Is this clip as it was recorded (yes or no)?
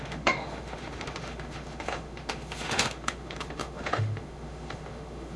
no